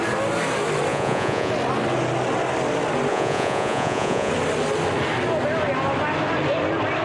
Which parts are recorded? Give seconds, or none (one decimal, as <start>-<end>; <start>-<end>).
0.0-0.9; 1.5-3.1; 4.3-7.0